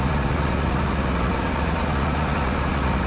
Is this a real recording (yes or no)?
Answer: no